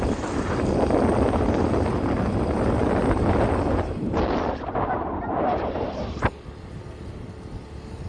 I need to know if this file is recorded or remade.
recorded